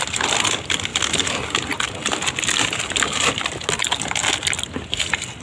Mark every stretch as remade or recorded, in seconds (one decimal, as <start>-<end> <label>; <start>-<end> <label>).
0.0-5.4 recorded